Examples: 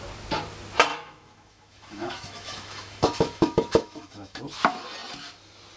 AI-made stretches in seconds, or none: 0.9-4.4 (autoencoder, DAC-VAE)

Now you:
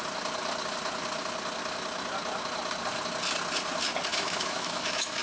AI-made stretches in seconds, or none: 4.1-5.2 (autoencoder, DAC-VAE)

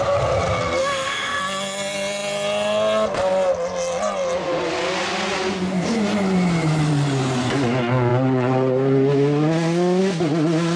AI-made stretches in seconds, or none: 0.8-1.4 (autoencoder, DAC-VAE)

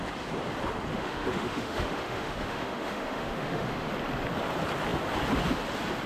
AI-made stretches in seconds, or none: 0.9-3.9 (autoencoder, DAC-VAE)

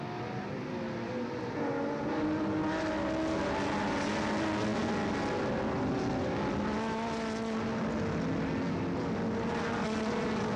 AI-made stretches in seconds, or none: none